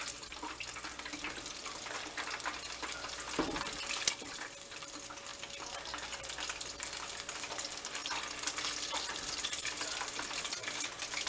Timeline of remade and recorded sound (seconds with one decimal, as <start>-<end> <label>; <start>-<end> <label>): 0.0-11.3 recorded